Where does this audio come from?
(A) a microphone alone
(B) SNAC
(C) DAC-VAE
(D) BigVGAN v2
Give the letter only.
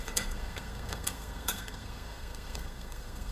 B